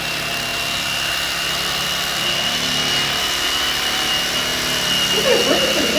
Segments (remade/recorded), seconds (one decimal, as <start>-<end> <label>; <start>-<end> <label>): 0.0-0.5 recorded; 0.5-4.1 remade; 4.1-6.0 recorded